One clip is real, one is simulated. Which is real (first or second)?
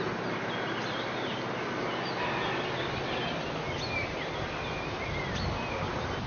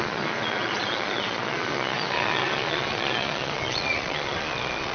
first